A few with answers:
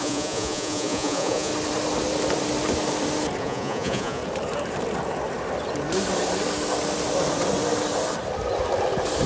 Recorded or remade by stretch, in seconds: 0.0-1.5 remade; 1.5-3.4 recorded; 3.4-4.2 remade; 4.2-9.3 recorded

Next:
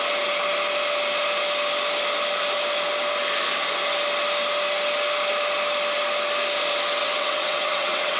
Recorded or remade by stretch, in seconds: 0.0-7.0 recorded; 7.0-8.2 remade

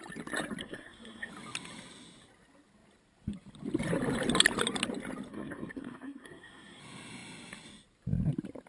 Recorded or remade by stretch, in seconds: 0.0-0.6 recorded; 0.6-1.3 remade; 1.3-5.3 recorded; 5.3-6.8 remade; 6.8-8.7 recorded